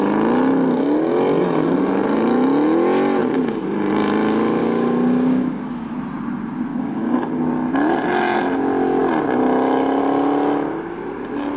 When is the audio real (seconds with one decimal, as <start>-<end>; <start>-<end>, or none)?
0.0-4.6; 5.7-6.7; 7.5-11.6